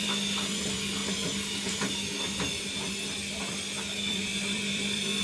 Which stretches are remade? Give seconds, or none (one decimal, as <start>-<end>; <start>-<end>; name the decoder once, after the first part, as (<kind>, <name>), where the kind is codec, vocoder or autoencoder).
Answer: 0.0-1.0 (vocoder, BigVGAN v2); 4.1-5.2